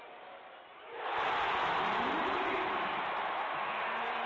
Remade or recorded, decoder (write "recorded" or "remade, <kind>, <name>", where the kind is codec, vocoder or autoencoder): remade, vocoder, BigVGAN v2